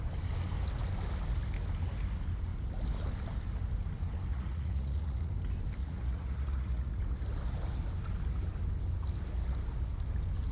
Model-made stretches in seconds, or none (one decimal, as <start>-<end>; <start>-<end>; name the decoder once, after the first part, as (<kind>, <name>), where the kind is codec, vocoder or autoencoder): 4.3-5.3 (vocoder, Vocos); 5.8-7.0